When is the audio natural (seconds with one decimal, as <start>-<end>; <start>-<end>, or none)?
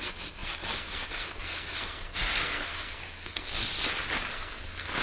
3.7-4.3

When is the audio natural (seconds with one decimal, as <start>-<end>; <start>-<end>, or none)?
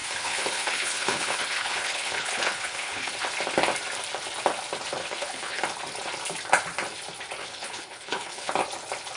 3.1-5.0; 5.6-7.4; 8.5-9.2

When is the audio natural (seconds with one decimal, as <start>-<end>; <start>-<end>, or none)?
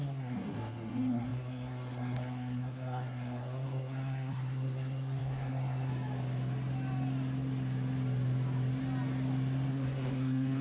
5.9-9.7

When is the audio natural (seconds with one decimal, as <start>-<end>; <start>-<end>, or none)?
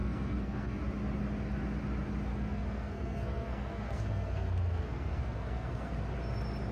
0.8-2.3; 5.9-6.7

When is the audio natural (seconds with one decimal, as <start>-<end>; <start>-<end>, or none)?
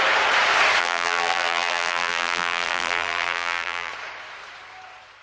0.0-0.8; 3.9-5.2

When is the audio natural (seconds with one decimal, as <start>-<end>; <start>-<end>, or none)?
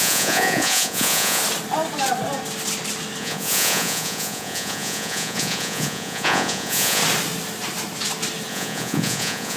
1.4-3.2; 7.0-8.5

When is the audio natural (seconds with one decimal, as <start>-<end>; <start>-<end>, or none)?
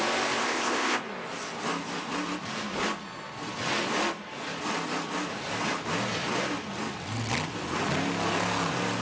0.0-0.4; 1.0-9.0